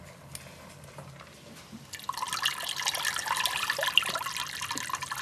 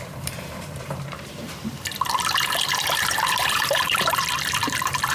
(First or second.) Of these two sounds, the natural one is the first